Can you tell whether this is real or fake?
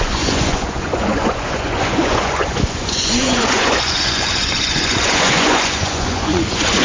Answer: fake